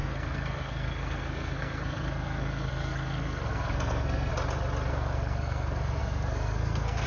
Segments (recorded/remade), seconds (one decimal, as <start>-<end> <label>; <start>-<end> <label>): 0.0-4.3 remade; 4.3-4.9 recorded; 4.9-7.1 remade